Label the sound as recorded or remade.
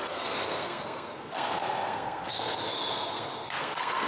remade